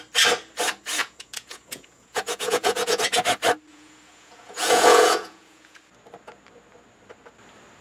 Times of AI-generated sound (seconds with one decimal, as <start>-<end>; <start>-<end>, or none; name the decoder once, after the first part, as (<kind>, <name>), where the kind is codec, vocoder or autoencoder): 1.0-3.0 (vocoder, Vocos); 3.7-5.8